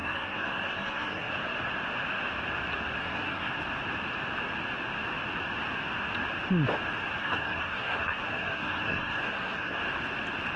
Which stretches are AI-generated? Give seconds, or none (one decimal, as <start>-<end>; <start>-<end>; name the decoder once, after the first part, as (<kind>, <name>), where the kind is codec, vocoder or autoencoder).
0.0-1.3 (codec, SNAC); 3.0-3.5; 7.2-9.8